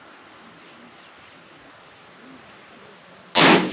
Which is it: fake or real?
real